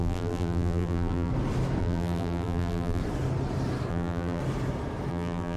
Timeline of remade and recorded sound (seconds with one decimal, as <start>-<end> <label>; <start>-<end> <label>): 0.0-1.3 remade; 1.3-1.8 recorded; 1.8-3.0 remade; 3.0-3.9 recorded; 3.9-4.4 remade; 4.4-5.1 recorded; 5.1-5.6 remade